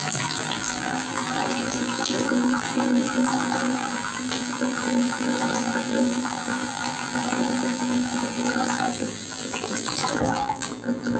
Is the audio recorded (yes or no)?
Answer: no